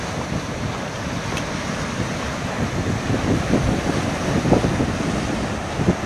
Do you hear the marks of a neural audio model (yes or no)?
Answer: no